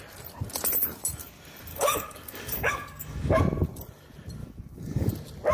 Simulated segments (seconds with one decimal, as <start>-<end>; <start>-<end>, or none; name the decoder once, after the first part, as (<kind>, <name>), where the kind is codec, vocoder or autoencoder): 1.7-3.4 (codec, DAC); 4.4-5.1